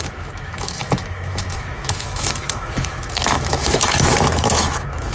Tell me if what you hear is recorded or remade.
remade